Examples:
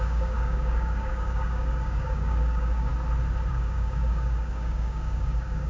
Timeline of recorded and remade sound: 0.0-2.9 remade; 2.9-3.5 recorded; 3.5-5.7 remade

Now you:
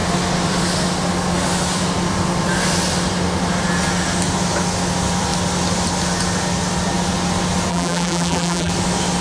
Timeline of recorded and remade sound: 0.0-7.7 recorded; 7.7-8.7 remade; 8.7-9.2 recorded